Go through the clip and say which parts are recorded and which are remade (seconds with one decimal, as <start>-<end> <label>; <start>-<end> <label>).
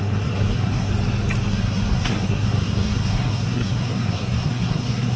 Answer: 0.0-0.9 remade; 0.9-1.5 recorded; 1.5-5.2 remade